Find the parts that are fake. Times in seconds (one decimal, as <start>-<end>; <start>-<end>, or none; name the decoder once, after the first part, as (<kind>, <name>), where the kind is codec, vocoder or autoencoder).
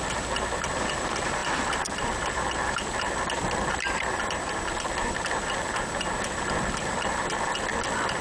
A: 0.0-8.2 (vocoder, BigVGAN v2)